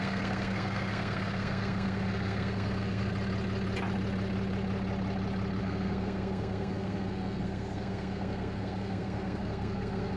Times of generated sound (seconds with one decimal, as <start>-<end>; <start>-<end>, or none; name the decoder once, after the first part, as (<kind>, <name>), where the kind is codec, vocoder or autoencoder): 0.0-3.1 (codec, SNAC); 5.6-10.2